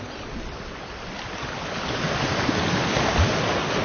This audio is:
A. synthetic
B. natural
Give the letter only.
B